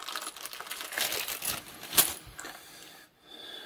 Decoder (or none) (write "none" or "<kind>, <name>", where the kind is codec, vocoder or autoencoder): none